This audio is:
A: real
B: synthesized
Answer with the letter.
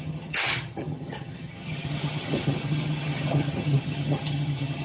B